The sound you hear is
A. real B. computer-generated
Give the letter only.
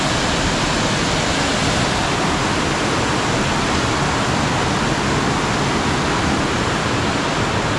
A